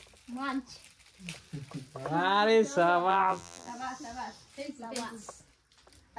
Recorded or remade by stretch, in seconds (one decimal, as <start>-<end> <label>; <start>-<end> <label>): 0.0-3.1 recorded; 3.1-3.7 remade; 3.7-6.2 recorded